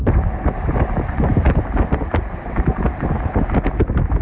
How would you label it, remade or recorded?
recorded